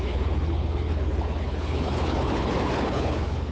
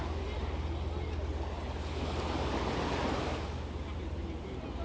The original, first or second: second